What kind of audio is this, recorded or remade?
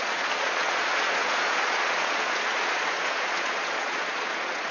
remade